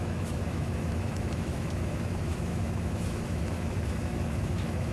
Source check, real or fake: fake